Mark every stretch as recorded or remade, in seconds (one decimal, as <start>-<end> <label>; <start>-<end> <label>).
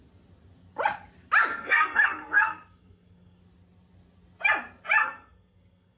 0.0-1.5 recorded; 1.5-3.4 remade; 3.4-5.0 recorded; 5.0-6.0 remade